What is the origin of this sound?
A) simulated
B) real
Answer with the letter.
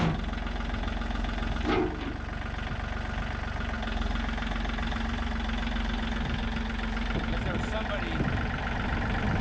B